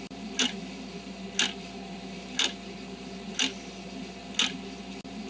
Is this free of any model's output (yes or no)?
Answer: yes